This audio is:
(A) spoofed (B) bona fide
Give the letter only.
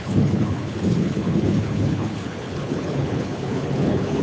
A